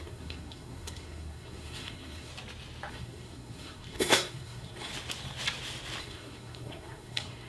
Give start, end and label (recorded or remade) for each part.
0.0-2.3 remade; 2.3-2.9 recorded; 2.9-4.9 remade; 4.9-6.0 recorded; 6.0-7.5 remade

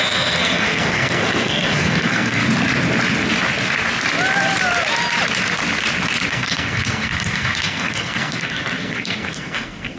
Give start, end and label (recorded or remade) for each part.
0.0-2.4 remade; 2.4-6.3 recorded; 6.3-10.0 remade

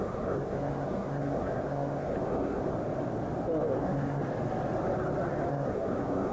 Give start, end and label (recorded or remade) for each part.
0.0-2.7 remade; 2.7-3.8 recorded; 3.8-4.2 remade; 4.2-5.5 recorded; 5.5-6.3 remade

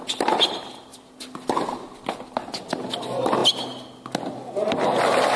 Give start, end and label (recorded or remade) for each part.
0.0-5.4 recorded

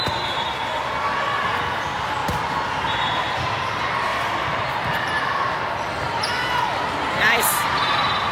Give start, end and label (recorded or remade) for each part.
0.0-8.3 recorded

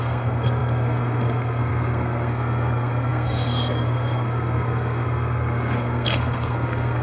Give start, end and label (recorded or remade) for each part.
0.0-7.0 remade

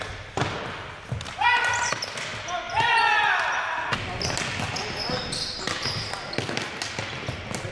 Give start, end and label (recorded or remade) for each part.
0.0-7.7 recorded

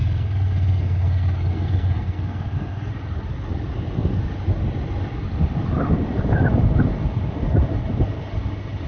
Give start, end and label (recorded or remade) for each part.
0.0-2.9 remade; 2.9-8.9 recorded